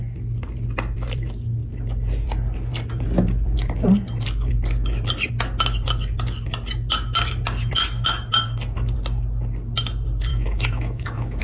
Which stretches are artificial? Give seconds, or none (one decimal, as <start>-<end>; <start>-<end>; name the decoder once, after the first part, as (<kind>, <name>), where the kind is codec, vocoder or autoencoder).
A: 10.3-11.4 (autoencoder, DAC-VAE)